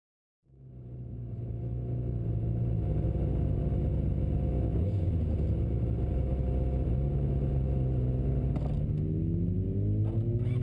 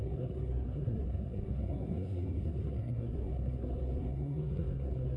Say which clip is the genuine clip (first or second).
first